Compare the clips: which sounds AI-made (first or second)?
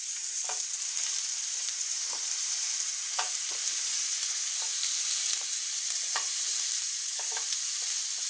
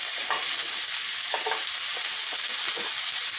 first